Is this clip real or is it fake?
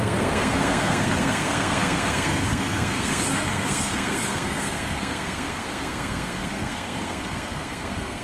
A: fake